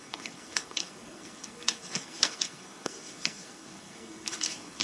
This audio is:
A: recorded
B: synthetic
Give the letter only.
B